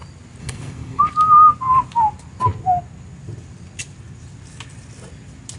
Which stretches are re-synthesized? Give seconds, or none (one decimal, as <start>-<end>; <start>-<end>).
0.4-1.0